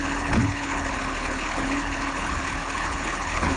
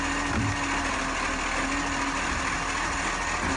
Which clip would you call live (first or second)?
second